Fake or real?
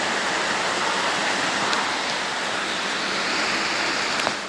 real